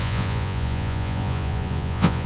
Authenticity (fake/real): fake